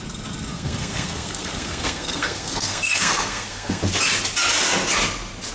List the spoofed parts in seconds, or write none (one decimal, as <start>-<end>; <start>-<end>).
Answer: 0.5-3.8